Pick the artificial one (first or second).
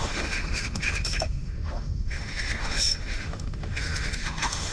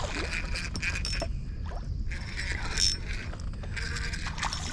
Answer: first